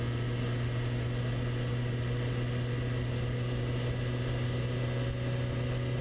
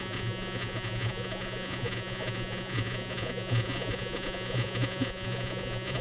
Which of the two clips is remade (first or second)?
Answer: second